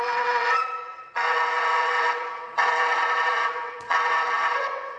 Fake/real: fake